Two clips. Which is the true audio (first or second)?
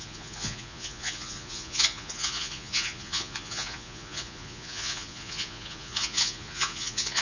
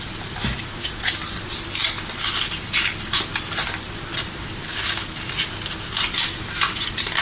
second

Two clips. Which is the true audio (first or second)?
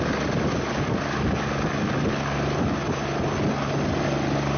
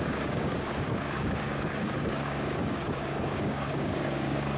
first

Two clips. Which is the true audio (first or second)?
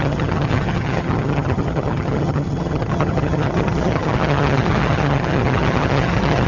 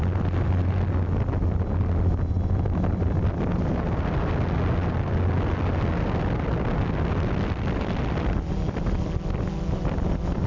second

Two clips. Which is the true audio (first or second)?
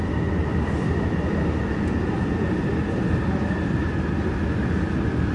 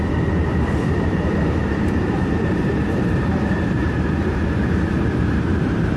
first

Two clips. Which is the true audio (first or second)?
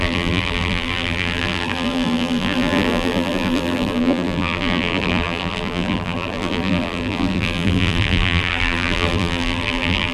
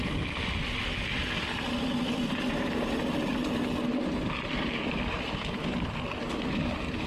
second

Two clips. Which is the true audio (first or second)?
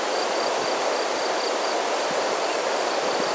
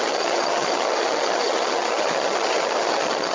first